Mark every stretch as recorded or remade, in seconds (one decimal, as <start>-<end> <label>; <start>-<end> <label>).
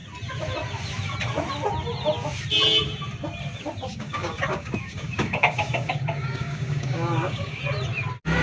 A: 0.0-3.9 recorded; 3.9-7.6 remade; 7.6-8.4 recorded